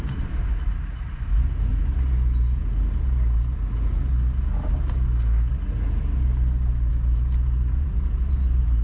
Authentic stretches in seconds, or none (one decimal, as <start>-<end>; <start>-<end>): 1.7-6.9